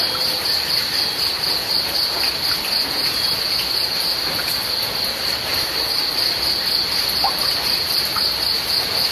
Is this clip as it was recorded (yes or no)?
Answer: yes